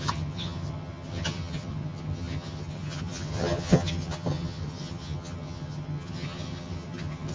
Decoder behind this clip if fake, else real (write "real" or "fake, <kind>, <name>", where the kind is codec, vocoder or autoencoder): fake, vocoder, HiFi-GAN